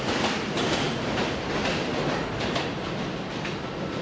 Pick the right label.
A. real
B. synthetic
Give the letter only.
A